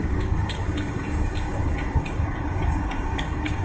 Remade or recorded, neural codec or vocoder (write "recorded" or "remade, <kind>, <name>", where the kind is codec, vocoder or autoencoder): remade, codec, DAC